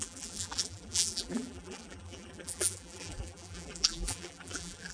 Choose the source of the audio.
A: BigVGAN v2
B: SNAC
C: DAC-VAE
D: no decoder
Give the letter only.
A